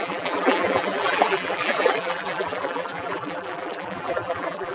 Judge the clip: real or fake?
fake